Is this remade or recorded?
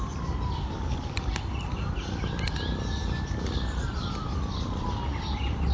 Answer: recorded